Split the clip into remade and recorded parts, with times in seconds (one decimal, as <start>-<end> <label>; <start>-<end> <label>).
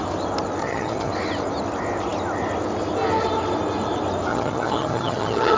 0.0-0.6 recorded; 0.6-1.1 remade; 1.1-4.3 recorded; 4.3-5.6 remade